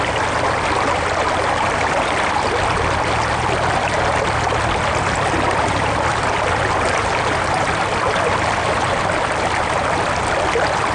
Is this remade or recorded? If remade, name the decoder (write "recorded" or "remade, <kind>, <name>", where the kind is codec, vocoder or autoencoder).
recorded